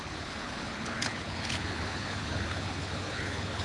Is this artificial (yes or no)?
yes